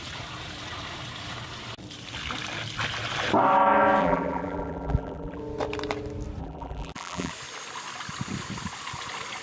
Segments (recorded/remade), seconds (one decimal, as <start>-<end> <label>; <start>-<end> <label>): 0.0-4.0 recorded; 4.0-5.4 remade; 5.4-6.4 recorded; 6.4-7.3 remade; 7.3-9.4 recorded